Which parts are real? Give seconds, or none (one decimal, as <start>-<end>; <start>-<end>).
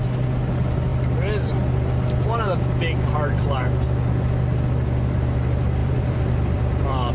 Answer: 0.0-5.8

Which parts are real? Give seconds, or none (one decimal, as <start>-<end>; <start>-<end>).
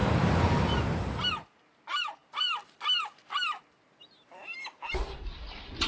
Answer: 0.8-2.2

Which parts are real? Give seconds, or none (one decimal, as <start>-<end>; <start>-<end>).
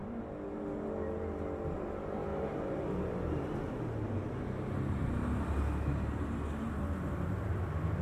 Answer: 0.0-2.3; 3.5-8.0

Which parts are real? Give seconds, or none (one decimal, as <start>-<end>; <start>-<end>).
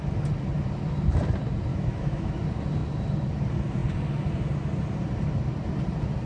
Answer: 0.0-1.7; 2.3-6.3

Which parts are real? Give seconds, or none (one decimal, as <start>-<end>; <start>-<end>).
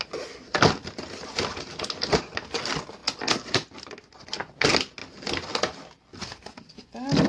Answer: 0.0-7.3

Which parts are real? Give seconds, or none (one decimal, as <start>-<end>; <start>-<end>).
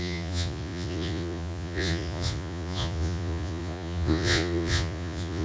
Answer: none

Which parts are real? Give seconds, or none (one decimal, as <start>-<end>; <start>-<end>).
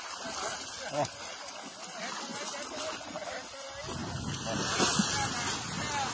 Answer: 0.0-6.1